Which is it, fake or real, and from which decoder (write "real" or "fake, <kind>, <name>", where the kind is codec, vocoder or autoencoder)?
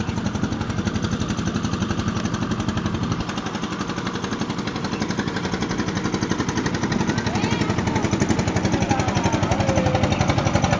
real